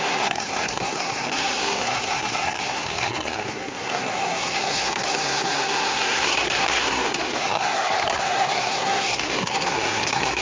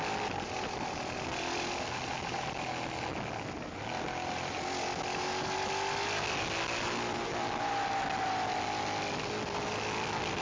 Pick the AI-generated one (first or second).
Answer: first